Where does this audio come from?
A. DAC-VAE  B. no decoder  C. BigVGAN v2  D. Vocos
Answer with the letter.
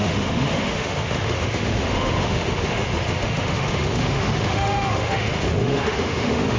A